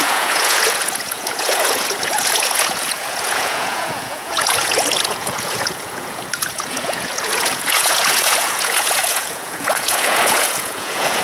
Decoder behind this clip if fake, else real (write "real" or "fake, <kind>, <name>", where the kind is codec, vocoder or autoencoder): fake, vocoder, Vocos